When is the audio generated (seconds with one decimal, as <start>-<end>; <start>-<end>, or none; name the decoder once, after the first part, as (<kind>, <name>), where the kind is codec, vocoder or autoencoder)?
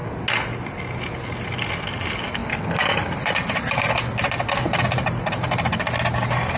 none